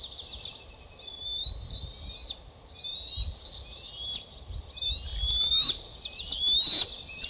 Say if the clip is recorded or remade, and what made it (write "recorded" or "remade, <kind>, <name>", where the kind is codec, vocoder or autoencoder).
recorded